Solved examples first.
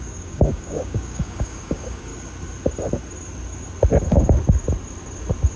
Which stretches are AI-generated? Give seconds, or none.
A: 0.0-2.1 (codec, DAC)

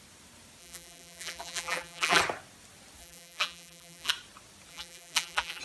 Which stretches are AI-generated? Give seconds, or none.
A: 0.6-2.2 (vocoder, BigVGAN v2); 3.0-4.1; 4.7-5.6

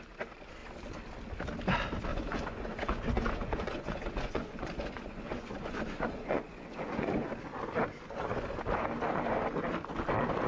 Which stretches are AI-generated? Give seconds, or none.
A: 2.1-7.3 (vocoder, Vocos)

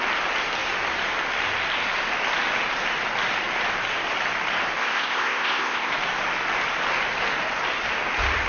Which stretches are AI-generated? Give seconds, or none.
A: 4.8-5.9 (codec, ZipCodec)

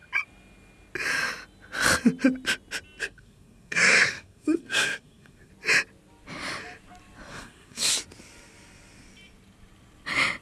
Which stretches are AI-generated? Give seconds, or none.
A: 3.0-5.5 (codec, SNAC); 7.3-7.9